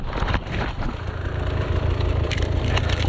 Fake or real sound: fake